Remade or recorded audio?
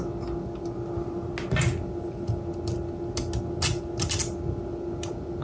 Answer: recorded